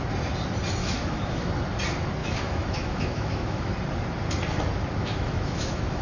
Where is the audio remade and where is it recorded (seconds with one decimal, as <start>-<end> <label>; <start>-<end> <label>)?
0.0-0.8 recorded; 0.8-1.5 remade; 1.5-2.2 recorded; 2.2-3.7 remade; 3.7-5.0 recorded; 5.0-6.0 remade